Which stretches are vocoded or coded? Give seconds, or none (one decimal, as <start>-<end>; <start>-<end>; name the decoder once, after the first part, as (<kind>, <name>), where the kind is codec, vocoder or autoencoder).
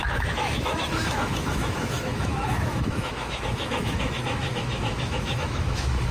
0.0-6.1 (autoencoder, DAC-VAE)